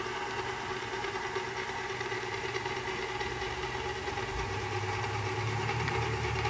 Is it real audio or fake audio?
fake